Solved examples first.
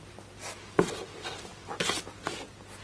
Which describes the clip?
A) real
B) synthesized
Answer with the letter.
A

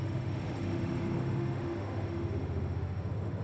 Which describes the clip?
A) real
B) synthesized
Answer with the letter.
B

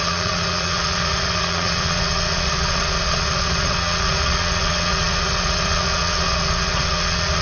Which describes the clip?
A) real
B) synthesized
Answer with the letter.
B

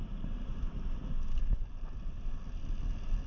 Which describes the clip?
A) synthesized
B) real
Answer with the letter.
B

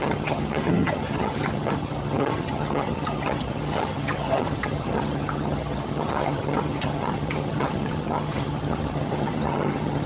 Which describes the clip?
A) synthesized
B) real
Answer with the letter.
A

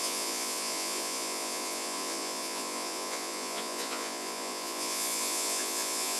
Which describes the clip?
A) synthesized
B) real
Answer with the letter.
A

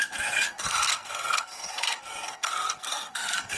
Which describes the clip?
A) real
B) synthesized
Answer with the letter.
B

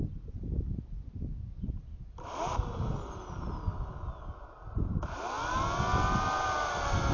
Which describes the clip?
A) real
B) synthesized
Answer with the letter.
A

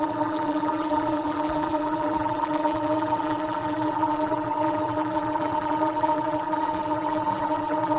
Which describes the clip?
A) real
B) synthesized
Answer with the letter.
B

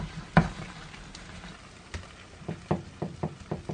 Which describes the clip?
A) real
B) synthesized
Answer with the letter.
A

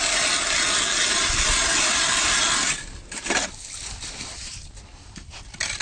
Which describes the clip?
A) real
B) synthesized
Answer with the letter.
A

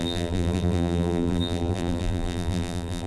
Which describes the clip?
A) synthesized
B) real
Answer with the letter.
A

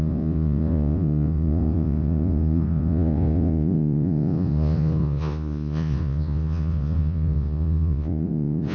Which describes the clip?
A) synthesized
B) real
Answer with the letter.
A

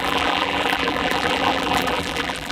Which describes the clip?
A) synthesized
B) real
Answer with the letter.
A